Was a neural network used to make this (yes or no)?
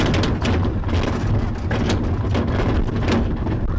no